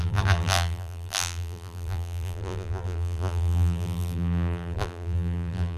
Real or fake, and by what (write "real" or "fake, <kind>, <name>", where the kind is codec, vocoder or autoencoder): fake, vocoder, BigVGAN v2